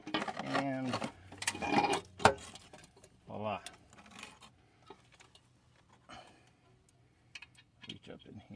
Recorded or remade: recorded